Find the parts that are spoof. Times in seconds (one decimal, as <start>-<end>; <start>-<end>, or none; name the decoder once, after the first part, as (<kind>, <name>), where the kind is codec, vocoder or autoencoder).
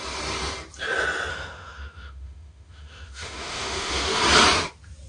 1.3-4.2 (autoencoder, DAC-VAE)